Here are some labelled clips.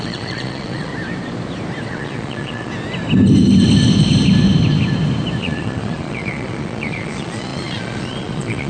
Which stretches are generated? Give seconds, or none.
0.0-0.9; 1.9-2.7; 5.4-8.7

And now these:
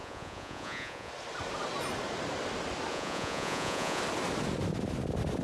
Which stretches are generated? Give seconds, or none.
0.0-1.1; 2.9-4.0